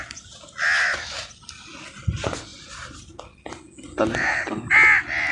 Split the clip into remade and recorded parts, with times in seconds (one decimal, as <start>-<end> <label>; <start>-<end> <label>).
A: 0.0-5.3 recorded